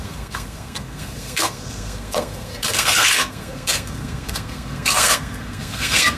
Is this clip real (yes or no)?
no